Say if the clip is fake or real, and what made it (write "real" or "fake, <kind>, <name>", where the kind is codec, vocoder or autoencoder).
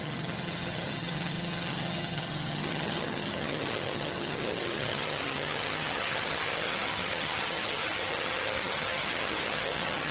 fake, vocoder, HiFi-GAN